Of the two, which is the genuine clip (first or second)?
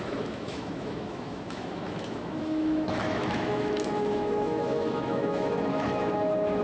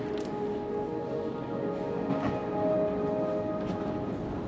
second